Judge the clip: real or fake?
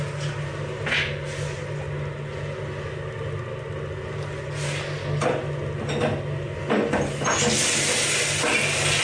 real